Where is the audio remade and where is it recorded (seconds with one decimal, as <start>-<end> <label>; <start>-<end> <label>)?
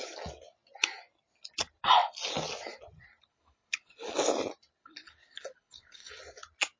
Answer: 0.0-3.3 recorded; 3.3-4.1 remade; 4.1-4.8 recorded; 4.8-6.1 remade; 6.1-6.8 recorded